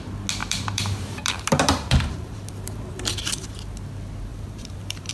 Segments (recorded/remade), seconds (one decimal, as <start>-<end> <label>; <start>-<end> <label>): 0.0-0.4 recorded; 0.4-3.5 remade; 3.5-4.3 recorded; 4.3-5.1 remade